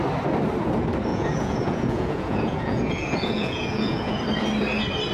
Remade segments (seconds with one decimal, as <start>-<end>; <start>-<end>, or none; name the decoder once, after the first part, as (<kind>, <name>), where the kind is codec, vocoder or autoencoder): 1.1-4.2 (vocoder, Vocos)